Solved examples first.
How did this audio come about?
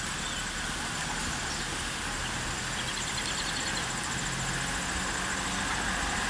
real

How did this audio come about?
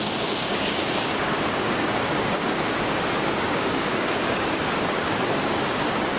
fake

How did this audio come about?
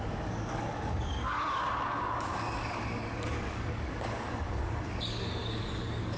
fake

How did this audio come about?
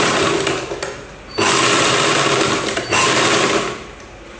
real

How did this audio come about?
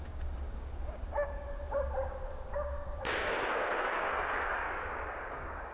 fake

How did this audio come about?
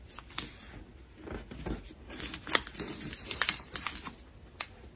real